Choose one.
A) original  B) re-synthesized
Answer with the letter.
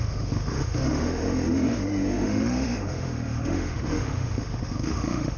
B